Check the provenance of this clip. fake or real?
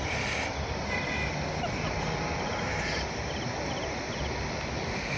real